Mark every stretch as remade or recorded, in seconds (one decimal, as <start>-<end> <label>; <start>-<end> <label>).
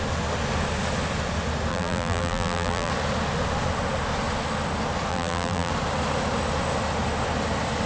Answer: 0.0-1.7 recorded; 1.7-2.9 remade; 2.9-5.1 recorded; 5.1-5.7 remade; 5.7-7.9 recorded